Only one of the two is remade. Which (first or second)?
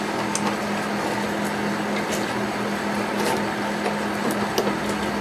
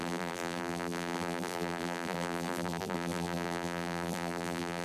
second